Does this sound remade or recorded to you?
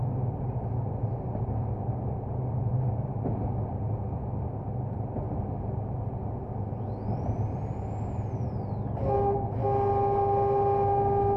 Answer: recorded